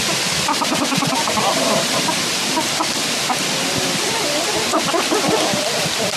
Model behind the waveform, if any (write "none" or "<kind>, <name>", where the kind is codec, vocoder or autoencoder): none